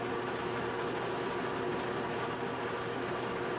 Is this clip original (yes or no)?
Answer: yes